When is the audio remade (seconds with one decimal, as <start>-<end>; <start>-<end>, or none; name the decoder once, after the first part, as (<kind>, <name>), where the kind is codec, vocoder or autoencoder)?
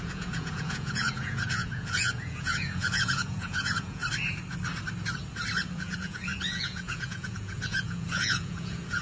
0.0-4.0 (vocoder, Vocos); 5.7-9.0